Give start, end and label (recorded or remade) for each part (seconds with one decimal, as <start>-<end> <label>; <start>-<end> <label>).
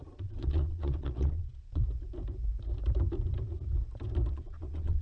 0.0-1.8 remade; 1.8-4.3 recorded; 4.3-5.0 remade